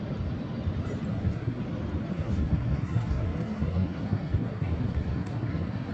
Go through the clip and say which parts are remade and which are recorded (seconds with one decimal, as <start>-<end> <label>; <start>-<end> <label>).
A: 0.0-1.1 recorded; 1.1-1.6 remade; 1.6-2.1 recorded; 2.1-5.9 remade